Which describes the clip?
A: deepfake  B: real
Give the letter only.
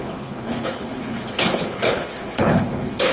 A